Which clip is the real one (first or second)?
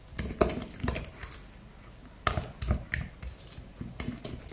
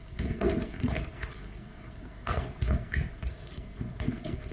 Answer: first